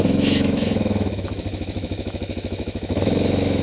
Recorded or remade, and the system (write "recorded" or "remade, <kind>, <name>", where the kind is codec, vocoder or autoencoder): remade, autoencoder, DAC-VAE